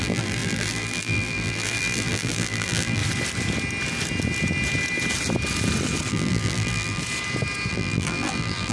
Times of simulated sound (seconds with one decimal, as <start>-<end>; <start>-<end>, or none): 0.0-3.0; 6.1-7.0; 7.7-8.7